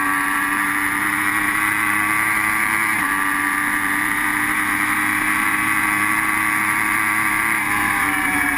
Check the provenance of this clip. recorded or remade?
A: remade